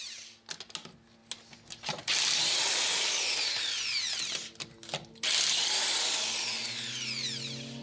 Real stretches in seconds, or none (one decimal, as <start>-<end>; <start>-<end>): 0.0-7.8